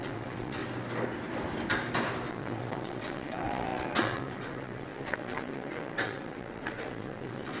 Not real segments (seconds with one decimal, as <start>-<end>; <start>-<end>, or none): 0.0-0.6; 2.3-7.6